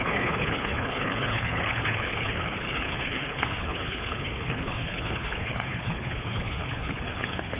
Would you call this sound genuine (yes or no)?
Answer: no